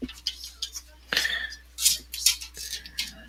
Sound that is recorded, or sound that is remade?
recorded